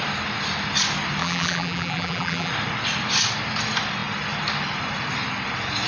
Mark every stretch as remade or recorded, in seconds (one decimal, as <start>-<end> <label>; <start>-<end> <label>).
0.0-1.2 recorded; 1.2-2.5 remade; 2.5-5.9 recorded